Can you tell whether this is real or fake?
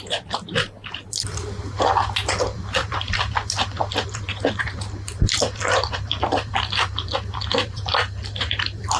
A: fake